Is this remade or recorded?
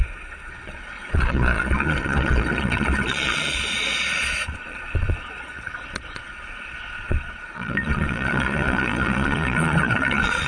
remade